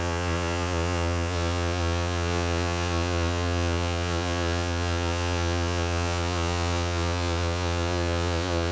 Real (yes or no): no